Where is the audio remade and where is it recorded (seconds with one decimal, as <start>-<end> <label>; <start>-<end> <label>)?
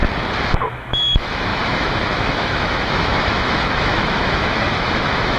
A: 0.0-0.7 recorded; 0.7-5.4 remade